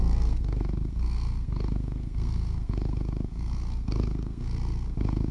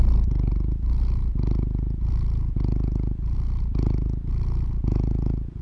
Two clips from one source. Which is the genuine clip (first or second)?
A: second